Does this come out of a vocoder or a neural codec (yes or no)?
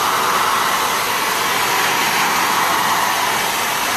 no